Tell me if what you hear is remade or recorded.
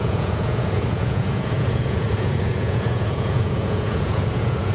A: remade